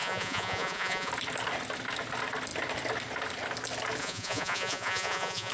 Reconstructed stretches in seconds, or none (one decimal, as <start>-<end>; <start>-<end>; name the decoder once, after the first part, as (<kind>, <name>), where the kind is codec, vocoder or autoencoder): 0.0-1.1 (vocoder, Vocos); 4.0-5.5